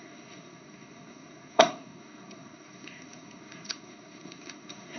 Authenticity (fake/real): fake